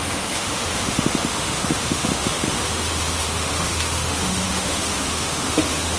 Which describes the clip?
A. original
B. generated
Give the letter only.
B